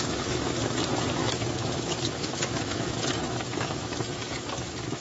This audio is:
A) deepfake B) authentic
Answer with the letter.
A